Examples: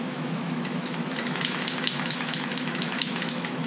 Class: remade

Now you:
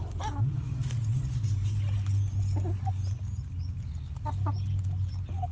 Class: recorded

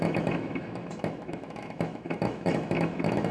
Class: remade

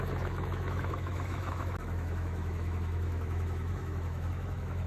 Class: remade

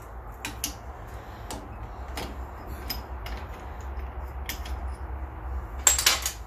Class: recorded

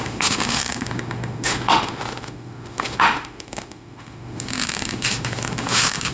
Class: remade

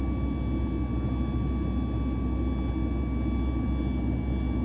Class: recorded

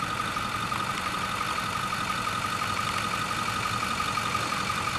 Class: recorded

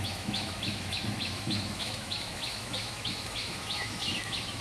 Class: remade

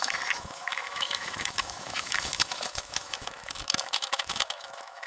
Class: remade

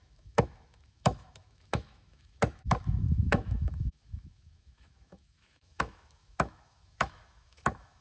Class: remade